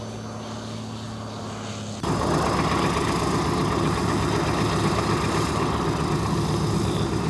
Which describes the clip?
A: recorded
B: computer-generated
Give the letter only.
A